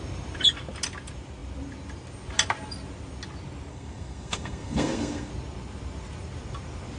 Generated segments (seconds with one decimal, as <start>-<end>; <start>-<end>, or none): 3.7-5.3